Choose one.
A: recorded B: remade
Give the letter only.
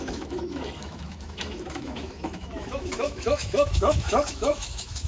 B